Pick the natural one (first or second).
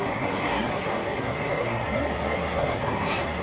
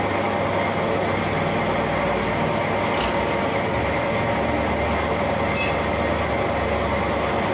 second